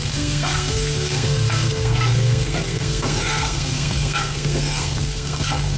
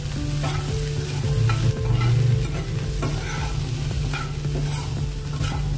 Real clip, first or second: second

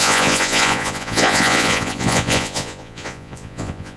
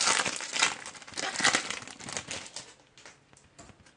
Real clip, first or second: second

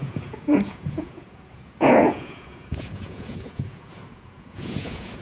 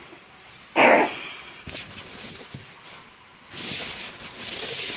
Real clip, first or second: second